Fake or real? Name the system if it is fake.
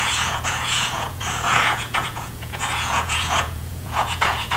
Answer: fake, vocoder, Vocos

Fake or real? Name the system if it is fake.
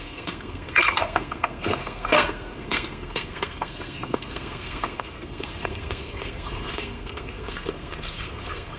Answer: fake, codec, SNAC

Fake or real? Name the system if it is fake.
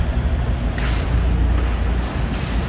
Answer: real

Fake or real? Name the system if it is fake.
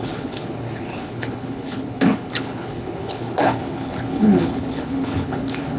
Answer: fake, codec, HILCodec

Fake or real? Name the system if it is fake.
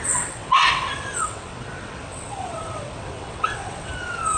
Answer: fake, vocoder, WaveNeXt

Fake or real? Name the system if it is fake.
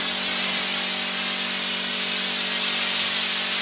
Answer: real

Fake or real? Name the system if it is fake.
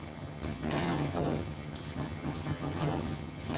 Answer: fake, vocoder, HiFi-GAN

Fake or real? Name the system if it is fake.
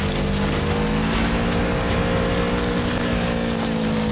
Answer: real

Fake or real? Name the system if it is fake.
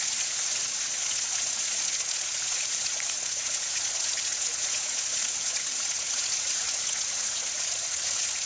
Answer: fake, vocoder, Vocos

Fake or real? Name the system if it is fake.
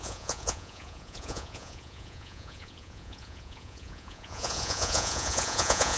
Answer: fake, vocoder, Vocos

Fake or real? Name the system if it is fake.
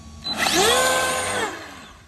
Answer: real